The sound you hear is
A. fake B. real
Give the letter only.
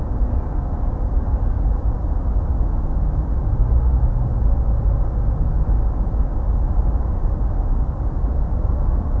B